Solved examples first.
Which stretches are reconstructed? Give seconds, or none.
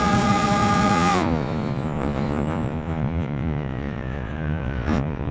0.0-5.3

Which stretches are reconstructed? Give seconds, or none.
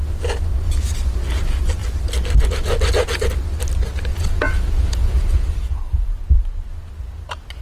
4.1-6.2